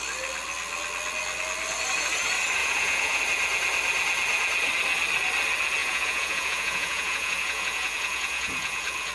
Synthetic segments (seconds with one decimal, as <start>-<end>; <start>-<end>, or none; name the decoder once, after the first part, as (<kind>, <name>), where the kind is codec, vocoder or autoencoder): 2.6-3.2 (vocoder, Vocos); 5.8-9.1